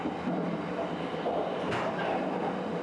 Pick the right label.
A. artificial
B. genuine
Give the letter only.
B